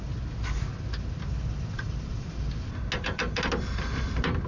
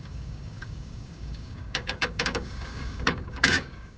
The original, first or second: first